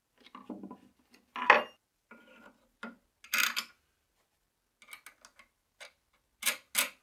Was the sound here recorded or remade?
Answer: recorded